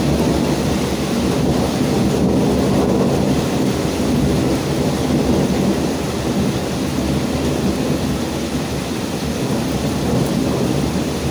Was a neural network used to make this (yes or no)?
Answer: no